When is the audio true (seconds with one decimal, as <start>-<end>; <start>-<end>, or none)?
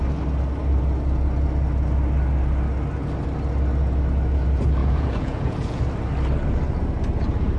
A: 0.0-4.8; 5.8-7.6